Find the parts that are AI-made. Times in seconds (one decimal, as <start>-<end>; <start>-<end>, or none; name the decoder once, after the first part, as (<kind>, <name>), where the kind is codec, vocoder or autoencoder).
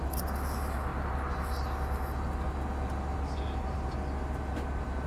none